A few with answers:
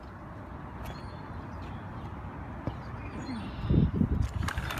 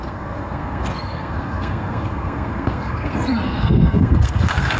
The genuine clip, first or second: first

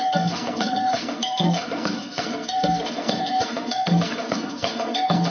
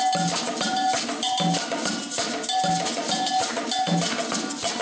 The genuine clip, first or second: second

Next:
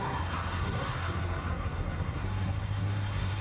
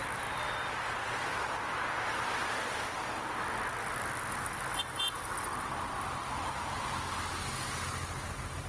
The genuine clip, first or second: second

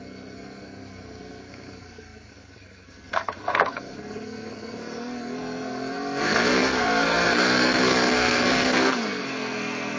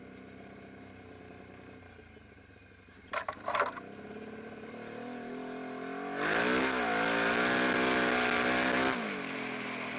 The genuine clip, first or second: second